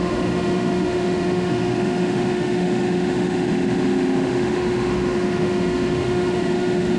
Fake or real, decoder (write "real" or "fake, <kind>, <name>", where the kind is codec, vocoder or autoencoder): fake, autoencoder, DAC-VAE